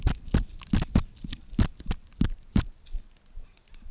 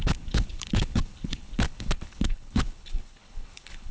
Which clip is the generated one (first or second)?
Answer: second